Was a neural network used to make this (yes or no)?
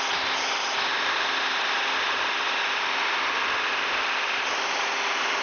no